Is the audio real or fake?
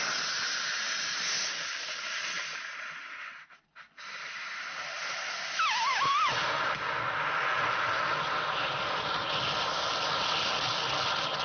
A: real